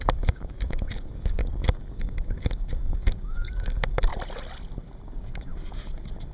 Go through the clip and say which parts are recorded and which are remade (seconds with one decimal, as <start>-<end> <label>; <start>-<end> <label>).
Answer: 0.0-1.4 remade; 1.4-1.9 recorded; 1.9-4.1 remade; 4.1-5.1 recorded; 5.1-5.5 remade; 5.5-6.3 recorded

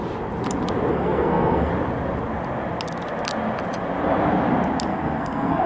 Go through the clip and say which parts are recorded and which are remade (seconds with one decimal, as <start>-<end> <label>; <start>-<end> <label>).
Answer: 0.0-0.9 recorded; 0.9-1.7 remade; 1.7-4.9 recorded; 4.9-5.7 remade

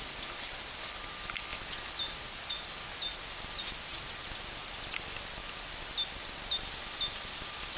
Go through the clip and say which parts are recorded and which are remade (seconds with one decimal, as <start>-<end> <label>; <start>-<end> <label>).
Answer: 0.0-7.8 recorded

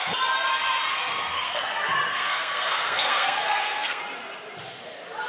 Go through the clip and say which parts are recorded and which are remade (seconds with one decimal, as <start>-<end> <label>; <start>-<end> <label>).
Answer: 0.0-0.9 recorded; 0.9-1.6 remade; 1.6-2.1 recorded; 2.1-4.0 remade; 4.0-5.3 recorded

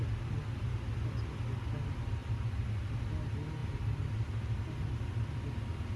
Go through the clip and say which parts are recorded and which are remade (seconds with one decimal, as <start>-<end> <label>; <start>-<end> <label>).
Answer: 0.0-6.0 recorded